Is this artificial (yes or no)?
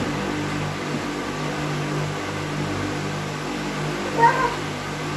no